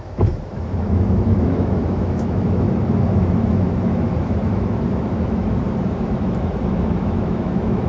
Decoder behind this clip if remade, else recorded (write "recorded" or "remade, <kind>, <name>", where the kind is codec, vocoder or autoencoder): remade, autoencoder, DAC-VAE